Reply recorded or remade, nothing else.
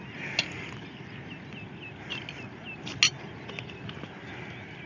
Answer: recorded